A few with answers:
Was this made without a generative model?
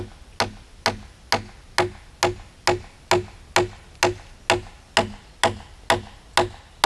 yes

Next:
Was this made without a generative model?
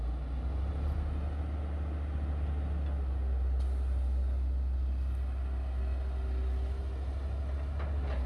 yes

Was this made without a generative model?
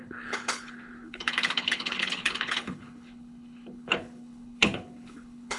no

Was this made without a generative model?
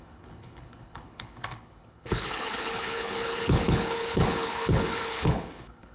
no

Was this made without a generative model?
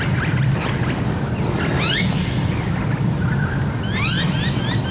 yes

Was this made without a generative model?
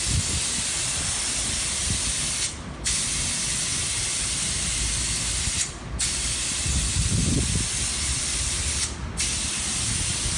yes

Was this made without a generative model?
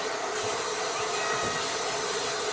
yes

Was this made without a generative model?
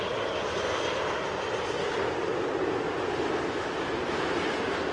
yes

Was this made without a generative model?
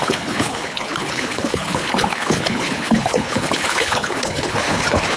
no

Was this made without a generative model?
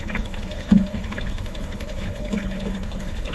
no